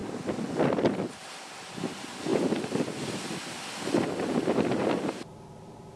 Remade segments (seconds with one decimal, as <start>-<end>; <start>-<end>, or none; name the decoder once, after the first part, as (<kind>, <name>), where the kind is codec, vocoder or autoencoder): none